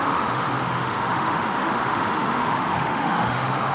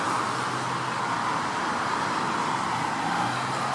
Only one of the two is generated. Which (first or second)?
first